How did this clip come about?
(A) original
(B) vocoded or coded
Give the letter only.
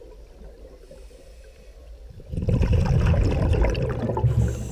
A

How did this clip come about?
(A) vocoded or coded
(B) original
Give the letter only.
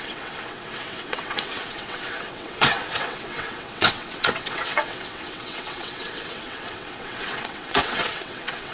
A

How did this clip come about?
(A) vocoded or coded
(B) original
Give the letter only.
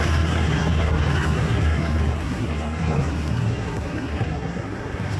A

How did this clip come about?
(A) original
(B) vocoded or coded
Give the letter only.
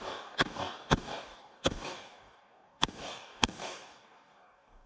B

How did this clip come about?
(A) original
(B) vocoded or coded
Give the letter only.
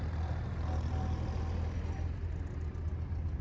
A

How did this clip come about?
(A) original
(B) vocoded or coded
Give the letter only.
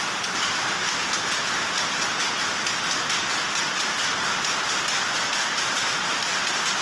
A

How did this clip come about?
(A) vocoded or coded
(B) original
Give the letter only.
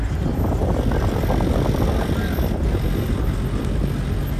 B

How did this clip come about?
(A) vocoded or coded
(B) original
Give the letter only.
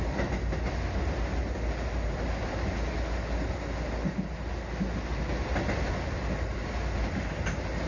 B